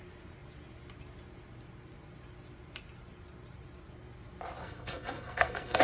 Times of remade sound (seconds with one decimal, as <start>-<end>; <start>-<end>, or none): 4.6-5.8